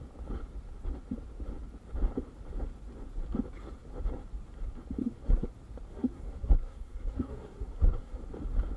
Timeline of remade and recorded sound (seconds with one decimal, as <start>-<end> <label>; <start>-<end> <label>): 0.0-5.0 recorded; 5.0-5.5 remade; 5.5-5.9 recorded; 5.9-8.2 remade; 8.2-8.8 recorded